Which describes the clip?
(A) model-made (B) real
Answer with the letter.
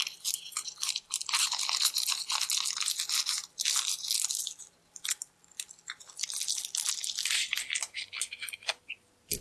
B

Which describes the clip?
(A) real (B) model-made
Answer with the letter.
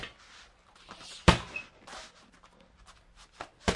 A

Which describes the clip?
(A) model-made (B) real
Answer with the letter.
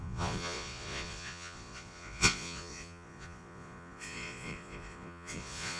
A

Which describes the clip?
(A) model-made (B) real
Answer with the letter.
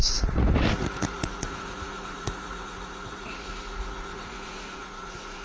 A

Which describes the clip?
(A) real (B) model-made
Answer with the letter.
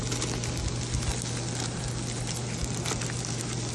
A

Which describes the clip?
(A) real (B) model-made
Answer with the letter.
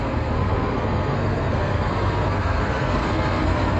B